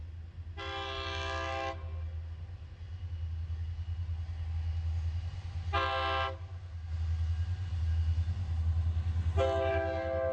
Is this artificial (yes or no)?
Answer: no